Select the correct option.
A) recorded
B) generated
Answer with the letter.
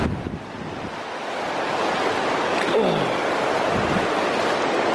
A